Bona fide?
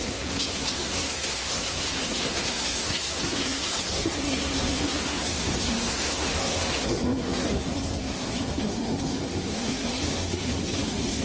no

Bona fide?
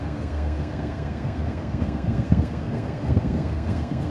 no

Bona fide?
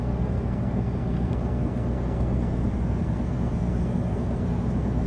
no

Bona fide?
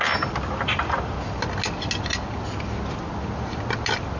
yes